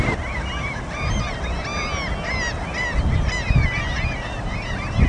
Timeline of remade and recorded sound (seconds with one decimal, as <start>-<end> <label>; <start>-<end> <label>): 0.0-5.1 recorded